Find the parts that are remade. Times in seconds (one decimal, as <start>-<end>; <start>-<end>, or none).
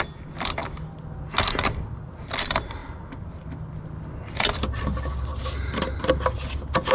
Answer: none